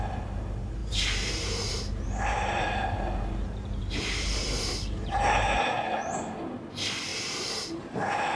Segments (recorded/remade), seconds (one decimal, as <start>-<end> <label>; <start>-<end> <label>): 0.0-0.8 recorded; 0.8-5.1 remade; 5.1-7.1 recorded; 7.1-8.4 remade